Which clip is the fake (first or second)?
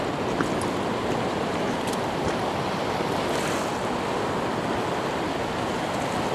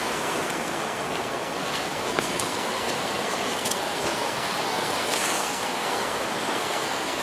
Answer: second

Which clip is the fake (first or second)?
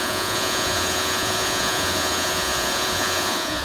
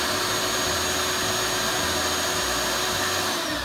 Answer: first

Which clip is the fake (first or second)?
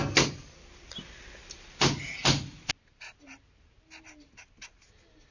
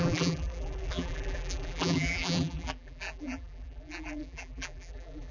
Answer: second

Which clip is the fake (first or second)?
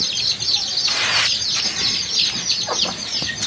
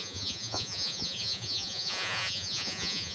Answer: second